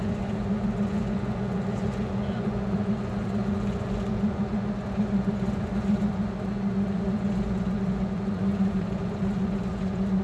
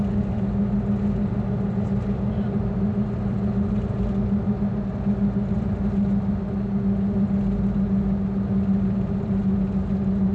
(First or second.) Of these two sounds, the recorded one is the second